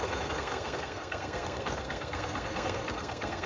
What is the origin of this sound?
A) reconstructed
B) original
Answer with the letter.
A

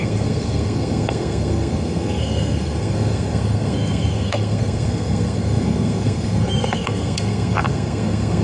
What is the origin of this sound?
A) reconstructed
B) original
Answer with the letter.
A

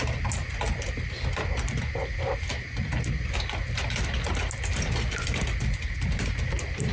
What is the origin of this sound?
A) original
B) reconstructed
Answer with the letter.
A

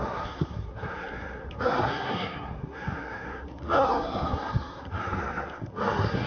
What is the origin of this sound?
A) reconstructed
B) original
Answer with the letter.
A